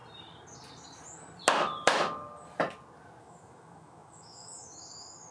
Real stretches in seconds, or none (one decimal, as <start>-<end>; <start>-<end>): 0.0-3.2